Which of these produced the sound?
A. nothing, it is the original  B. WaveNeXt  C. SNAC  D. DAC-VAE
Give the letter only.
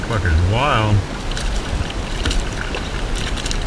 A